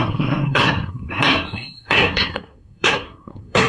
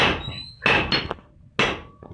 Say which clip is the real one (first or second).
second